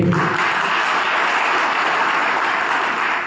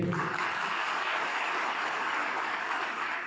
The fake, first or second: second